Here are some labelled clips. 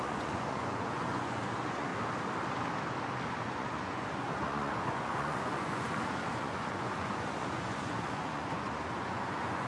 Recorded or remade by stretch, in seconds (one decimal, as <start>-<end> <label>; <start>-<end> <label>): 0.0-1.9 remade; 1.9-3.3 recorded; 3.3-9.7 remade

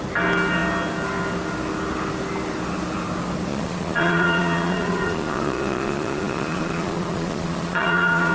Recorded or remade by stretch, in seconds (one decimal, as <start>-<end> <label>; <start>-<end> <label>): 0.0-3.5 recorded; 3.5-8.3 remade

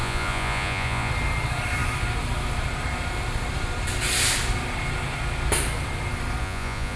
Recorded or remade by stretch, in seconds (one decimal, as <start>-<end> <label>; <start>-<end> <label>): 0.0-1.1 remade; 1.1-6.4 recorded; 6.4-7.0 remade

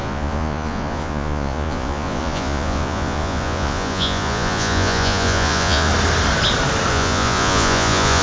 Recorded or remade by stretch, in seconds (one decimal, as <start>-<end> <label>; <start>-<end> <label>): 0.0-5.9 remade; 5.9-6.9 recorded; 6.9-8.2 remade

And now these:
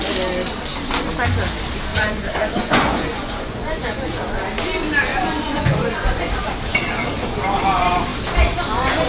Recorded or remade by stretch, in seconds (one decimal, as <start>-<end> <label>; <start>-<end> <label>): 0.0-1.9 recorded; 1.9-4.4 remade; 4.4-5.1 recorded; 5.1-6.2 remade; 6.2-9.1 recorded

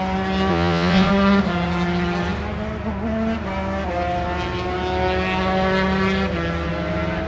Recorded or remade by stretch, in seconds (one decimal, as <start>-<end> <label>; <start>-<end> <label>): 0.0-0.5 recorded; 0.5-1.1 remade; 1.1-7.3 recorded